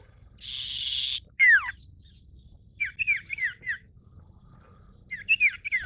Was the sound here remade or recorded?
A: recorded